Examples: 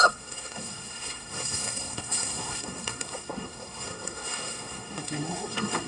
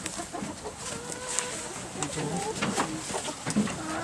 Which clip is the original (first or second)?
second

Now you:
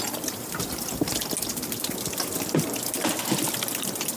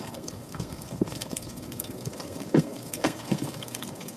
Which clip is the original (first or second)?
first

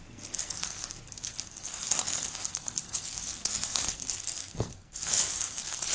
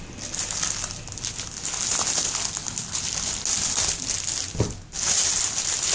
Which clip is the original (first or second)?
second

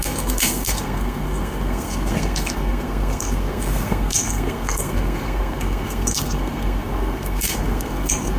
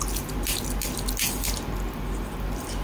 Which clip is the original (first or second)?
second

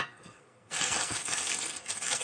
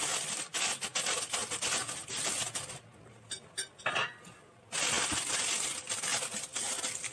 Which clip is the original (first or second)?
second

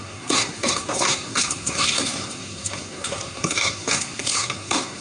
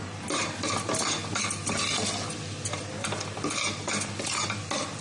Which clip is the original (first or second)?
second